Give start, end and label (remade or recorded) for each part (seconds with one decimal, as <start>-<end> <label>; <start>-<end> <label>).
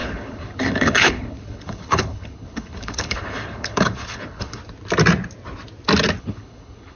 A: 0.0-4.6 remade; 4.6-6.2 recorded; 6.2-7.0 remade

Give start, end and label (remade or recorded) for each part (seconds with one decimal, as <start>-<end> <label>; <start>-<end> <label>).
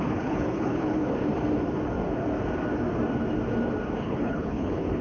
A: 0.0-1.0 remade; 1.0-4.0 recorded; 4.0-5.0 remade